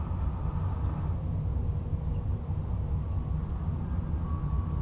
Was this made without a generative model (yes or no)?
yes